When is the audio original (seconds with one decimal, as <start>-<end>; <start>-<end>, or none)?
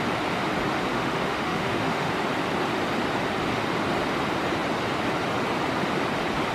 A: 0.0-0.9; 2.1-6.5